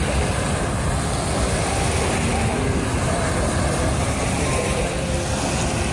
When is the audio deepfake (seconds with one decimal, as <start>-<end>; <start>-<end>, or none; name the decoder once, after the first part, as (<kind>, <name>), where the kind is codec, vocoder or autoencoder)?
none